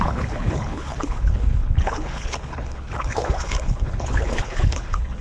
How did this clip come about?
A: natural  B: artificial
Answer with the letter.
B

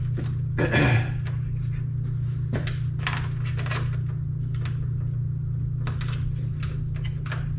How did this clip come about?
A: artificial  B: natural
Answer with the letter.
B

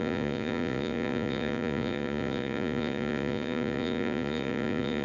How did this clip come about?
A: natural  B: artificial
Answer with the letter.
B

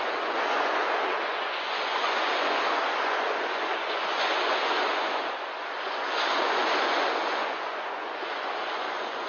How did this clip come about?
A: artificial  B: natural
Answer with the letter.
A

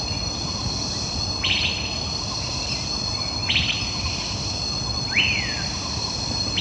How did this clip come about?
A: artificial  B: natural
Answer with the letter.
B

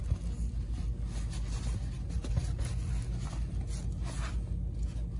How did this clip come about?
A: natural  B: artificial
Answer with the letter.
A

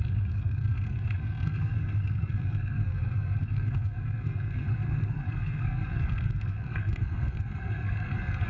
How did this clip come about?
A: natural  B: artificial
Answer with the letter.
B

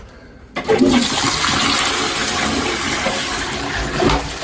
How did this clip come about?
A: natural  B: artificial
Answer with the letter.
A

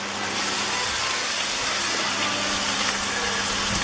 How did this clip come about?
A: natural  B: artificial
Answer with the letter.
A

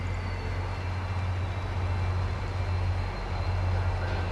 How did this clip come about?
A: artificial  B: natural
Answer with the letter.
B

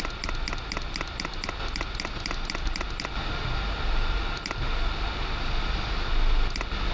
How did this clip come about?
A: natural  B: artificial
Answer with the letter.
A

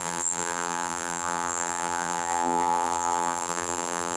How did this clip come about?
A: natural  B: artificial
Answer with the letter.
B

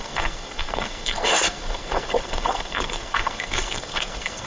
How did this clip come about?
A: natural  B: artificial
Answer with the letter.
B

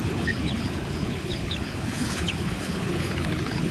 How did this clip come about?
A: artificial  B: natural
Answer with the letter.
A